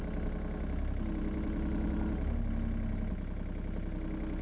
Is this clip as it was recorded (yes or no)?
yes